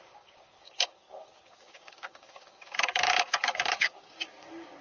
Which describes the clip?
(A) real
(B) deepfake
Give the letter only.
B